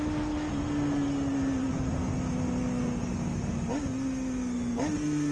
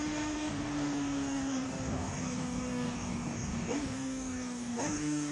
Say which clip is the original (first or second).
first